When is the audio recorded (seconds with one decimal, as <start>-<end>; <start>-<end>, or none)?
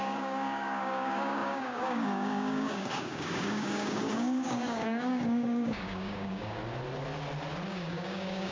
6.6-7.7